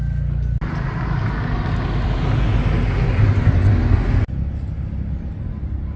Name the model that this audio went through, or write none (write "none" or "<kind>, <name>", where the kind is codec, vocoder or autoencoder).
none